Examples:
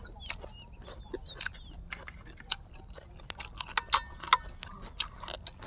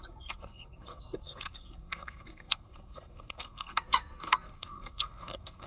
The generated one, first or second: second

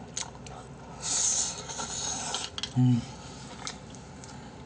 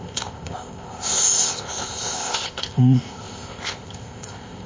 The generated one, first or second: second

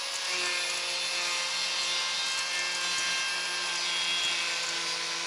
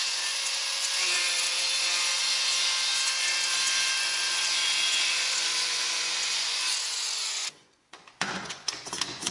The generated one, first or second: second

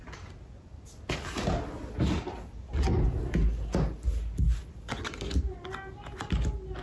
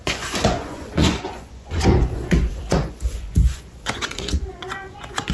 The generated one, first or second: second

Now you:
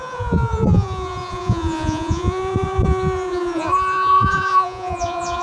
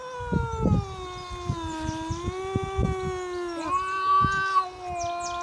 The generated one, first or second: first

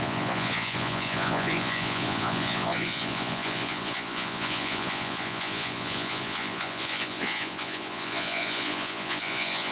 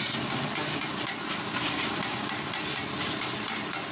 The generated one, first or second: first